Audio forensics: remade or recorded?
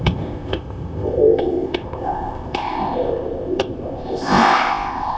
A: remade